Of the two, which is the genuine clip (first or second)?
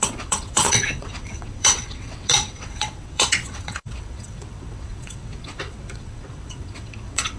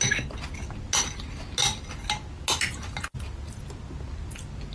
second